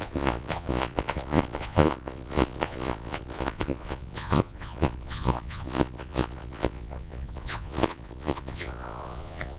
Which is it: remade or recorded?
remade